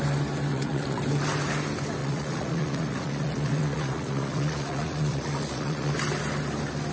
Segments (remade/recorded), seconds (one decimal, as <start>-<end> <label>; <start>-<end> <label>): 0.0-0.5 recorded; 0.5-1.0 remade; 1.0-2.0 recorded; 2.0-5.9 remade; 5.9-6.9 recorded